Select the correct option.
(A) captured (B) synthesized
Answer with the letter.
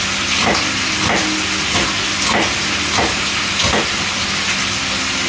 A